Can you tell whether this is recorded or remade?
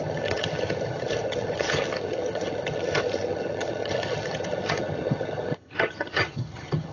remade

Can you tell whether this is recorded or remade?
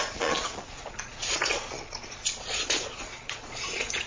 remade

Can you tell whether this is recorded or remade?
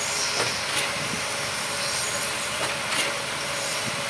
recorded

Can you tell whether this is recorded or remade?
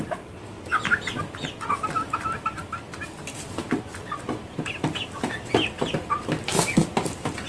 recorded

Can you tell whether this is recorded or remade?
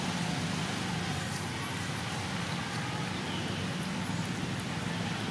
recorded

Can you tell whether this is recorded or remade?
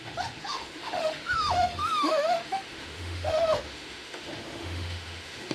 remade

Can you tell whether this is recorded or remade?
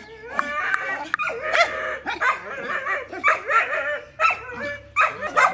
recorded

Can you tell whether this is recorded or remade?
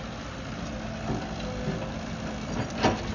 recorded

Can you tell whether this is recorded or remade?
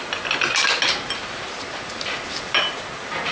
recorded